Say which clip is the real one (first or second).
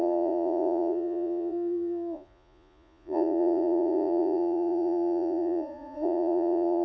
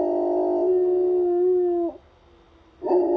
second